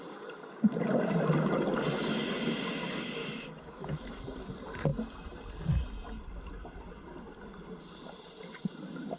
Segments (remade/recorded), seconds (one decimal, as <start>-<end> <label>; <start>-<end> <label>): 0.0-3.2 recorded; 3.2-4.1 remade; 4.1-9.2 recorded